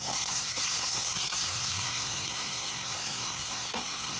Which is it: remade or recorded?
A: remade